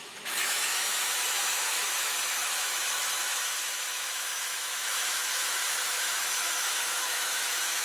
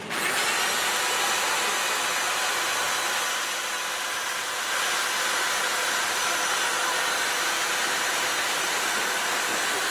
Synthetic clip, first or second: first